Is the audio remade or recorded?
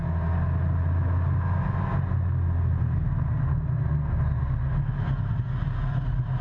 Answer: recorded